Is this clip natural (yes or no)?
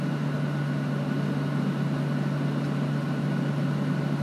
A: yes